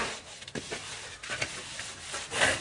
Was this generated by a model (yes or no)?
no